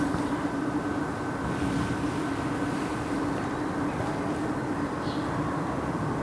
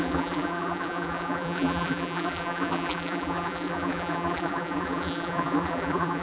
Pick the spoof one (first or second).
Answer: second